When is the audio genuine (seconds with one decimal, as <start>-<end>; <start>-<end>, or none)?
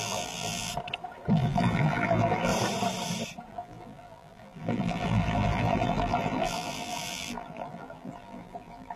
0.7-1.3; 2.5-3.5